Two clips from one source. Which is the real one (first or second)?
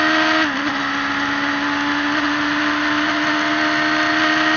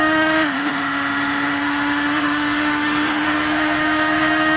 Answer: first